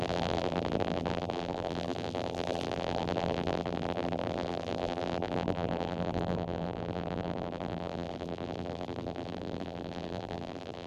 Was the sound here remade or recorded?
remade